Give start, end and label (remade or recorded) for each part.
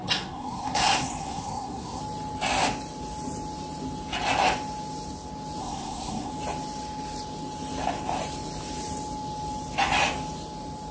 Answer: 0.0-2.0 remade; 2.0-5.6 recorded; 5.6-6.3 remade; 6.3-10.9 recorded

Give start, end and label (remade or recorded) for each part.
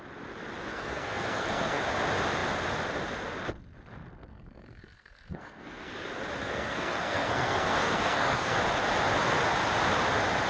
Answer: 0.0-0.7 recorded; 0.7-1.8 remade; 1.8-4.3 recorded; 4.3-5.9 remade; 5.9-6.4 recorded; 6.4-8.6 remade; 8.6-10.5 recorded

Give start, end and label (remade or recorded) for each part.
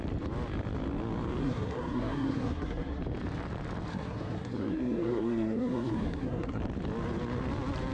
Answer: 0.0-1.4 recorded; 1.4-3.0 remade; 3.0-3.9 recorded; 3.9-6.6 remade; 6.6-7.9 recorded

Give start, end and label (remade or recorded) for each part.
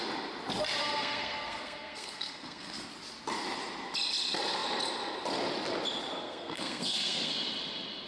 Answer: 0.0-0.8 recorded; 0.8-2.9 remade; 2.9-6.2 recorded; 6.2-7.3 remade; 7.3-8.1 recorded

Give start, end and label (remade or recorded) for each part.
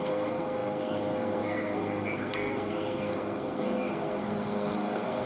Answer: 0.0-5.3 remade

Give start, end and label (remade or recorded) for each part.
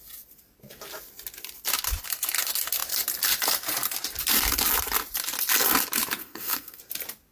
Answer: 0.0-6.2 recorded; 6.2-6.8 remade; 6.8-7.3 recorded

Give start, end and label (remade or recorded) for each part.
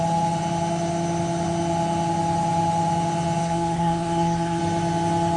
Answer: 0.0-3.4 recorded; 3.4-4.6 remade; 4.6-5.4 recorded